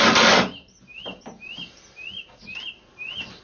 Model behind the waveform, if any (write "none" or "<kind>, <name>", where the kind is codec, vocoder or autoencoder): none